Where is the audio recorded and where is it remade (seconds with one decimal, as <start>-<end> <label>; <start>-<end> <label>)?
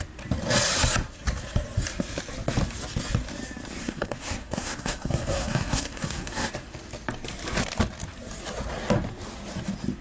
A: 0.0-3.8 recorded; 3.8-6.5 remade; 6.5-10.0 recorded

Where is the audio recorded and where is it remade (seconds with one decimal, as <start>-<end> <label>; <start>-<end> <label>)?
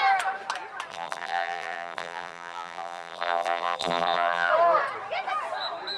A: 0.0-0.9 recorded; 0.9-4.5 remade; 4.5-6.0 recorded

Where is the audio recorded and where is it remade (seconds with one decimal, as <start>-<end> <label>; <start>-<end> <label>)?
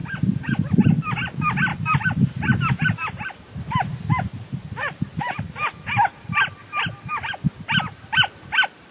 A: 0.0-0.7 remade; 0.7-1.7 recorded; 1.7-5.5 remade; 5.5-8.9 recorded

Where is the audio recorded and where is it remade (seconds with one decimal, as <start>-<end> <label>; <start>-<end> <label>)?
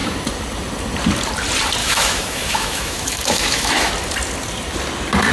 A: 0.0-1.8 recorded; 1.8-3.9 remade; 3.9-5.3 recorded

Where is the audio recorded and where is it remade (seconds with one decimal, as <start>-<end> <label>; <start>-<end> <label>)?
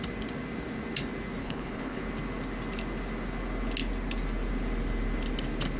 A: 0.0-1.4 recorded; 1.4-2.0 remade; 2.0-5.8 recorded